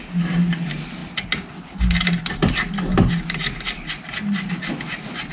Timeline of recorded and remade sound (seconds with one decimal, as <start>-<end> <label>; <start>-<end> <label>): 0.0-5.3 recorded